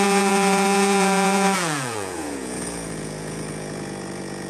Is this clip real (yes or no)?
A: no